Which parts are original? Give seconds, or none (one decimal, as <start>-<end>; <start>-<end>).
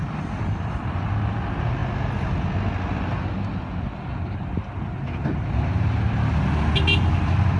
0.8-7.6